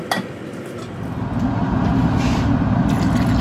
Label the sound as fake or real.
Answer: real